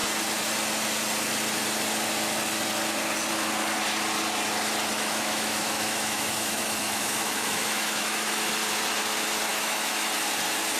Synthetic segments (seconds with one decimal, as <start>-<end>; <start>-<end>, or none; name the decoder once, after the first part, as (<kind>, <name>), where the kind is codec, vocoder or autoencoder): 5.0-8.5 (autoencoder, DAC-VAE); 9.5-10.1